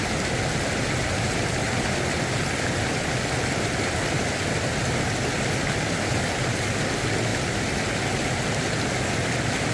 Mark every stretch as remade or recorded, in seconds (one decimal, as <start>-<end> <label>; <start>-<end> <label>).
0.0-9.7 recorded